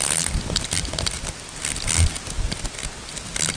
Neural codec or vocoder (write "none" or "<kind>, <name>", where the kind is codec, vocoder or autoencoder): none